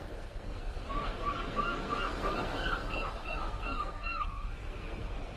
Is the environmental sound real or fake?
fake